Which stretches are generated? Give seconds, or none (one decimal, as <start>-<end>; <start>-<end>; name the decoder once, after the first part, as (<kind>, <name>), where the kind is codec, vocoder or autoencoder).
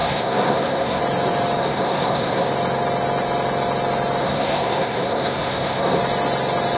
0.0-1.0 (codec, SNAC); 1.6-2.5; 4.2-6.0